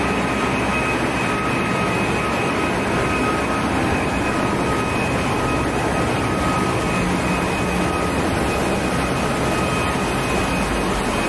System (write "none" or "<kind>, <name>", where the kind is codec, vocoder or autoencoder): none